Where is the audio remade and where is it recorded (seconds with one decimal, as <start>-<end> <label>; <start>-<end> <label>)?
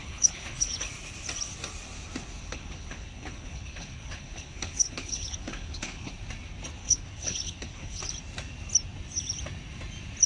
0.0-0.9 remade; 0.9-2.4 recorded; 2.4-6.1 remade; 6.1-6.8 recorded; 6.8-8.0 remade; 8.0-10.3 recorded